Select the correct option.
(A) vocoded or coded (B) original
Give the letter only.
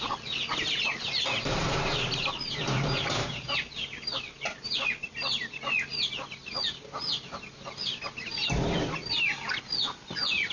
B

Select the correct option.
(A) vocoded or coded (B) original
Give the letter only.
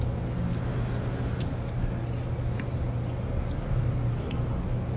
B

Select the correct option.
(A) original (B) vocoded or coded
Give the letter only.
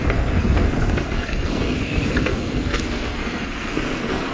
B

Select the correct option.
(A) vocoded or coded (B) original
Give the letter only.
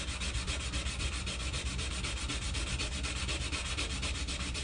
B